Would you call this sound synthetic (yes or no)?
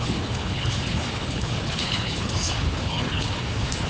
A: yes